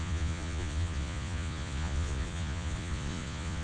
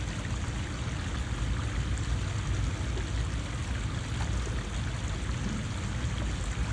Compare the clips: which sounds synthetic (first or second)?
first